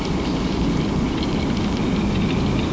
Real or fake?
real